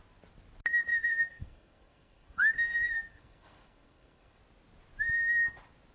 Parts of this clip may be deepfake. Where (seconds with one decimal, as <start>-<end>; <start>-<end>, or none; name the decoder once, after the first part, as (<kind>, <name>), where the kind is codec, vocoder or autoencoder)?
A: 0.9-4.4 (codec, SNAC)